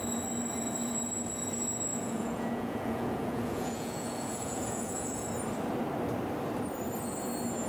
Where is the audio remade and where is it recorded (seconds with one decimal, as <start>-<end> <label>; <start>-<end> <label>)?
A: 0.0-1.9 recorded; 1.9-5.3 remade; 5.3-7.7 recorded